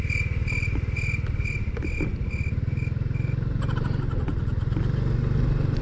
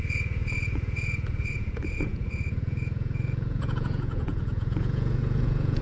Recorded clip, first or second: first